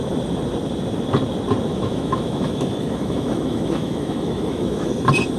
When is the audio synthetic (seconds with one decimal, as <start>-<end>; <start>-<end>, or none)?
1.7-4.9